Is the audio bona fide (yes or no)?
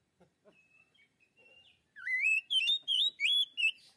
no